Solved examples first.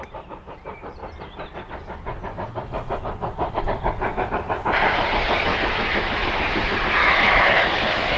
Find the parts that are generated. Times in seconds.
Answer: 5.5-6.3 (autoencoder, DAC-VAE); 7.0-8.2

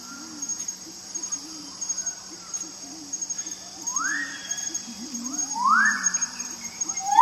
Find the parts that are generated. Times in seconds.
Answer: 0.5-3.0 (vocoder, BigVGAN v2); 3.9-7.2

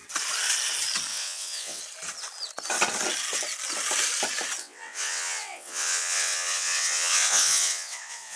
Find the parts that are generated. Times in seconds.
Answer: 1.1-1.8 (vocoder, WaveNeXt); 4.6-8.4

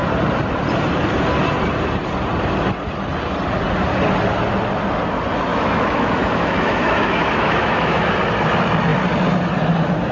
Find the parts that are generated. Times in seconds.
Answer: 5.5-8.1 (autoencoder, DAC-VAE)

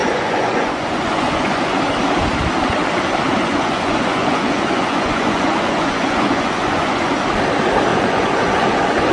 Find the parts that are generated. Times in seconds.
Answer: 0.0-1.8 (vocoder, Vocos); 3.5-7.1; 7.9-9.1

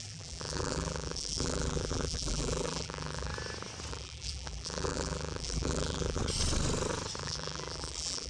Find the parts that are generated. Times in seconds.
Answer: 0.0-3.3 (vocoder, BigVGAN v2); 3.9-6.2; 7.2-8.3